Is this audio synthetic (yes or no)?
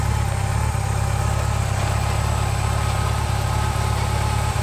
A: no